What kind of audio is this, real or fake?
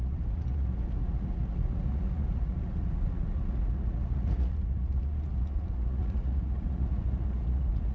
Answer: fake